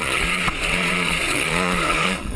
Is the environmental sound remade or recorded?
remade